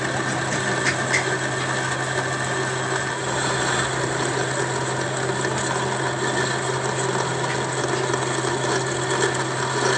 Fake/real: real